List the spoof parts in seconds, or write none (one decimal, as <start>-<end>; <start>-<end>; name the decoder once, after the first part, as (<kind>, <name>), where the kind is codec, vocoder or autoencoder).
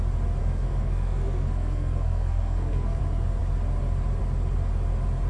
0.4-3.0 (codec, SNAC)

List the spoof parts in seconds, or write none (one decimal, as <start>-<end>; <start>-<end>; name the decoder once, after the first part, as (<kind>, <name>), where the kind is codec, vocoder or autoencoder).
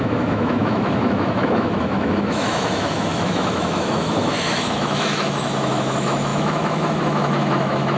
0.0-8.0 (autoencoder, DAC-VAE)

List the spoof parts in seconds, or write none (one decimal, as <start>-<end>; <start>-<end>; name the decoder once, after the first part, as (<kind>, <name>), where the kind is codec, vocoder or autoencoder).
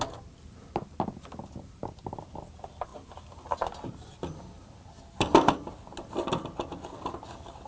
none